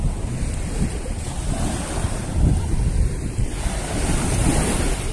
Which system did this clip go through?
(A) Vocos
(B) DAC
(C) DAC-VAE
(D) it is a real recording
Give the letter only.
D